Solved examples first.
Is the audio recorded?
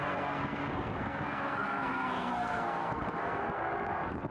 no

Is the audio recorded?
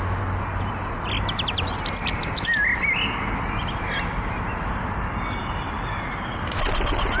yes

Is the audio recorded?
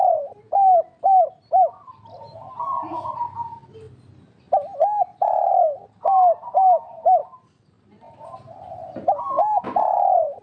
yes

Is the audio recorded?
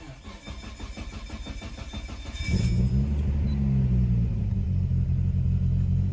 yes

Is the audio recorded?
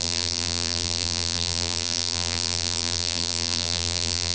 no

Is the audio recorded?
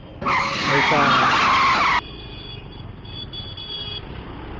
yes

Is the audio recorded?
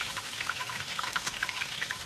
no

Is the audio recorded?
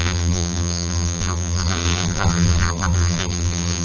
no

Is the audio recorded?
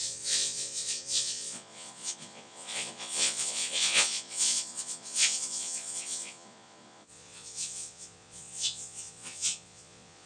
no